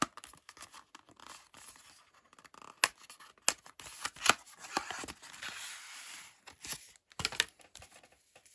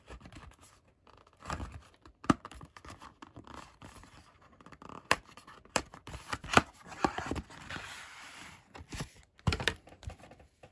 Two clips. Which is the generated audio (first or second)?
second